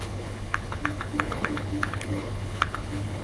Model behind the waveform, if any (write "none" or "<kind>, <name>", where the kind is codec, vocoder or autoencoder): codec, HILCodec